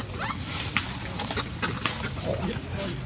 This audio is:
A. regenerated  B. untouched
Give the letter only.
B